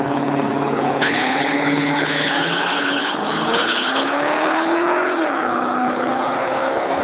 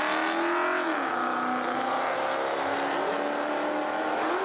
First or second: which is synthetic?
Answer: first